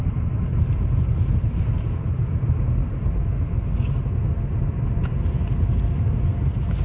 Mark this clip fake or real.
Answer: real